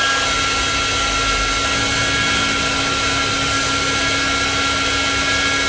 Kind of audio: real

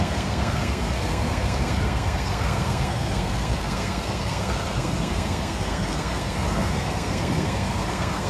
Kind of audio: fake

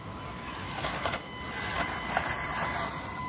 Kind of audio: real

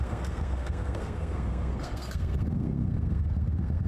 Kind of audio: fake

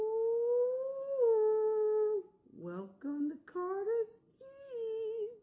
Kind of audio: real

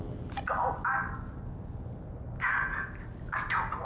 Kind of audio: real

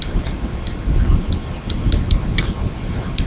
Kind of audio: real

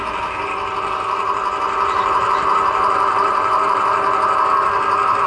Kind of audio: real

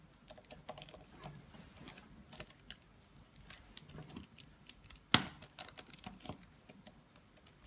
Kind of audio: real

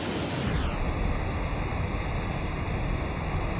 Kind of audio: real